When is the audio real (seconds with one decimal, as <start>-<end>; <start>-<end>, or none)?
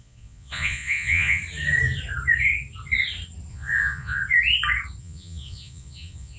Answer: 1.4-3.5; 4.2-5.0